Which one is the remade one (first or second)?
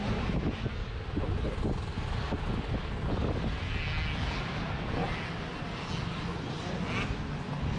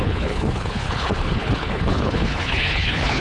second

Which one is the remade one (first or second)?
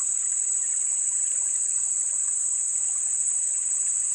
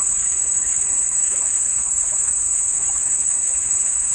second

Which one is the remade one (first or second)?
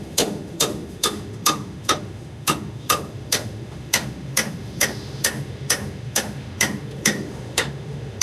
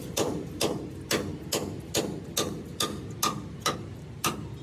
first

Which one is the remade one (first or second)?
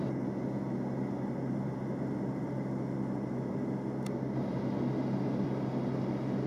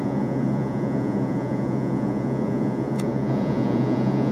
second